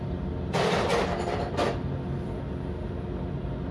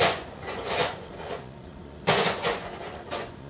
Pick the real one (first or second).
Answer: first